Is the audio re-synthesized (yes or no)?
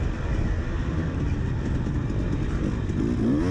no